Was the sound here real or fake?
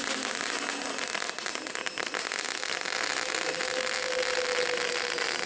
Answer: real